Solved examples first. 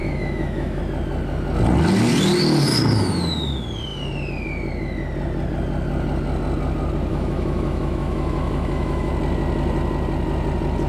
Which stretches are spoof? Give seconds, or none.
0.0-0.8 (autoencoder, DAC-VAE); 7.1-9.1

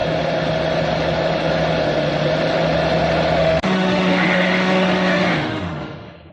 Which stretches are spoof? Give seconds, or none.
3.4-6.3 (autoencoder, DAC-VAE)

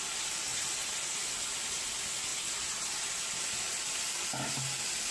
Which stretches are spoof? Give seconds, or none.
none